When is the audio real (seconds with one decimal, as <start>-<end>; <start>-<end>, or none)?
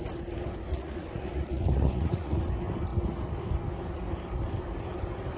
0.0-0.7; 2.4-5.4